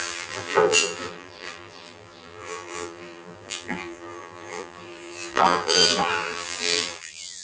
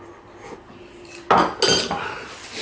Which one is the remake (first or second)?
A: first